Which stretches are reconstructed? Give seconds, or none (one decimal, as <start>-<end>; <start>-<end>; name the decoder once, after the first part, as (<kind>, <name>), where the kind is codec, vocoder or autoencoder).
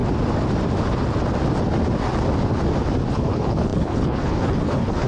3.1-5.1 (codec, HILCodec)